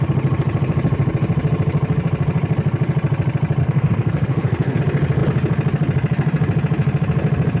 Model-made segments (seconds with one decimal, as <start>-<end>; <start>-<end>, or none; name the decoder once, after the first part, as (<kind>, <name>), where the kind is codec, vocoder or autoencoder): 3.6-4.8 (codec, SNAC)